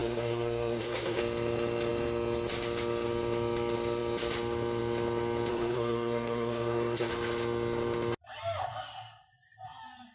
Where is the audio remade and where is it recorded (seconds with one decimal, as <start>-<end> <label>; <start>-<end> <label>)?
0.0-1.2 remade; 1.2-5.5 recorded; 5.5-7.1 remade; 7.1-10.1 recorded